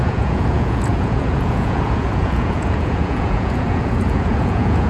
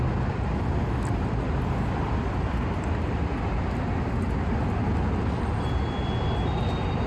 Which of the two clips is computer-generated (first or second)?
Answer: first